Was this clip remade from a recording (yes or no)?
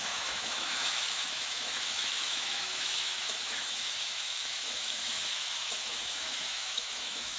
yes